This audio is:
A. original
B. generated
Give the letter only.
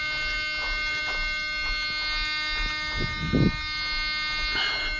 A